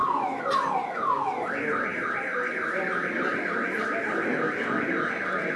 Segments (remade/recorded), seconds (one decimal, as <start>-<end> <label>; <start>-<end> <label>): 0.0-5.6 recorded